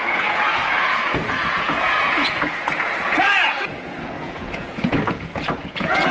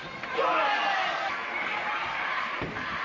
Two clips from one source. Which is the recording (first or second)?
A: second